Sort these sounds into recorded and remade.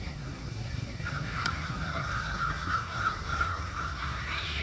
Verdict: remade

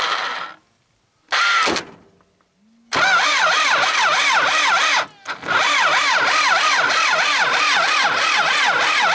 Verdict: recorded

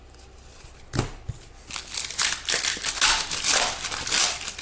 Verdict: recorded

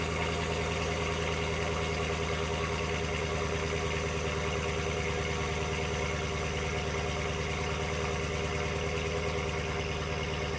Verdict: recorded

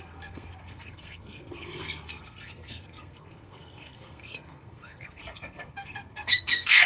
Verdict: remade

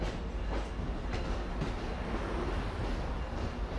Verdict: recorded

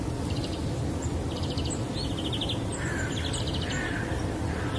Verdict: recorded